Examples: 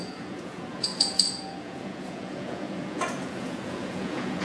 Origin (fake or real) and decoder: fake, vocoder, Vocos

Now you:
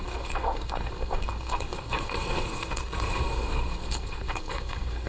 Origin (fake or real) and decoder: fake, codec, SNAC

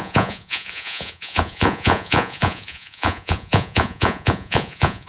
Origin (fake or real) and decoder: fake, vocoder, Vocos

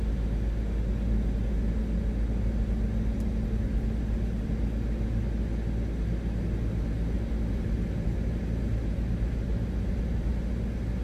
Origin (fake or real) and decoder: real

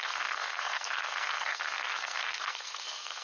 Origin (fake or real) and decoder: fake, codec, SNAC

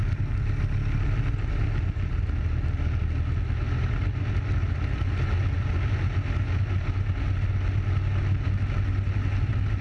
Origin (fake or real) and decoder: real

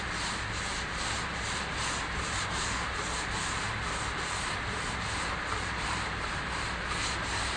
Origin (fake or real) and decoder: fake, vocoder, BigVGAN v2